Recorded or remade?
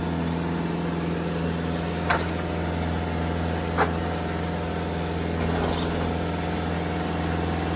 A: recorded